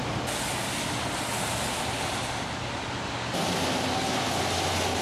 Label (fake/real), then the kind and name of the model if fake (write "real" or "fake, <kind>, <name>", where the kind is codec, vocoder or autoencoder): real